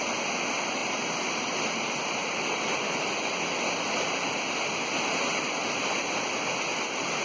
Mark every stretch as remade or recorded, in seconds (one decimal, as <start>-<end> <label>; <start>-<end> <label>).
0.0-7.2 recorded